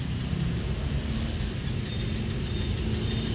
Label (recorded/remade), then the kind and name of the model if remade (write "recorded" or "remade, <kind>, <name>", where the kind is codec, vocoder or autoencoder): recorded